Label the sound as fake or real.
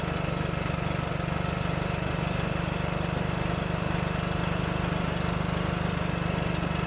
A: real